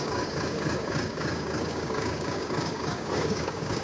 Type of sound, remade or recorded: remade